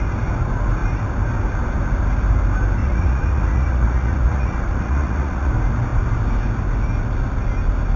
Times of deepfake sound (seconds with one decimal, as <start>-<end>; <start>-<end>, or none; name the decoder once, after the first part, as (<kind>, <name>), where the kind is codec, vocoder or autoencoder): 2.8-5.5 (vocoder, Vocos)